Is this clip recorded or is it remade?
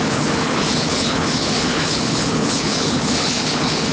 remade